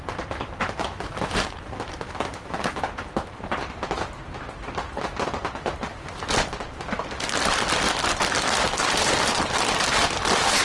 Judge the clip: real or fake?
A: real